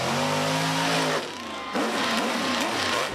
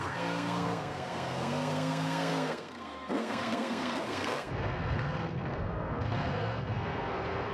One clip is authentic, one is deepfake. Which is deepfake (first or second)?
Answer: second